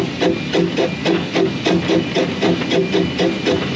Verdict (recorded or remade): recorded